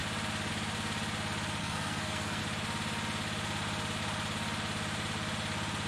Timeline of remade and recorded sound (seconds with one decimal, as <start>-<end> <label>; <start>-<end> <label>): 0.0-1.6 recorded; 1.6-2.4 remade; 2.4-5.9 recorded